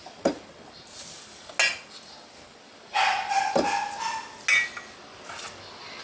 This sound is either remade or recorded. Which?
recorded